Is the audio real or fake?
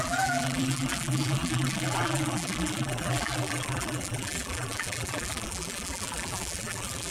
fake